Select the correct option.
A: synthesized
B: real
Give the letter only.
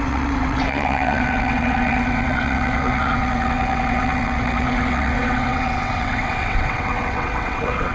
A